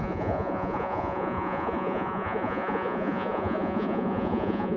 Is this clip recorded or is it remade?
remade